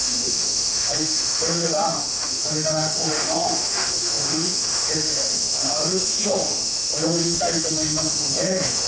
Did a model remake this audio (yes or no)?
yes